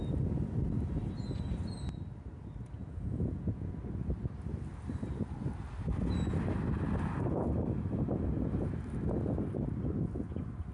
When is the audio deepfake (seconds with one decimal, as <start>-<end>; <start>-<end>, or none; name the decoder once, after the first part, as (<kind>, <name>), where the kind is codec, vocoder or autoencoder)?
2.8-3.7 (vocoder, Vocos)